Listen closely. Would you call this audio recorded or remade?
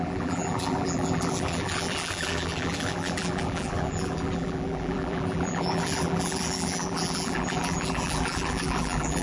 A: remade